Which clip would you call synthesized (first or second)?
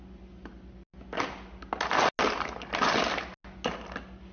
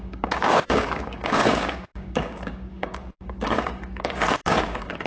second